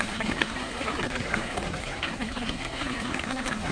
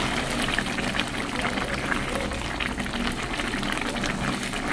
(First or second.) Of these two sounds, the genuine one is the second